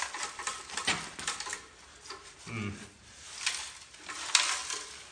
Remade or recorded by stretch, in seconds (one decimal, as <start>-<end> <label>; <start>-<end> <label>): 0.0-5.1 recorded